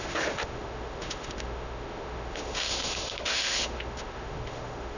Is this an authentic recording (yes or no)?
no